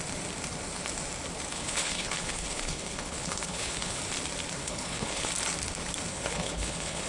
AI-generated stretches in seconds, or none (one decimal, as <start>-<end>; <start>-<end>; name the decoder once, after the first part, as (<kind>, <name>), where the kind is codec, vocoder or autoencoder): 1.5-4.0 (codec, HILCodec); 4.6-5.3; 6.1-7.1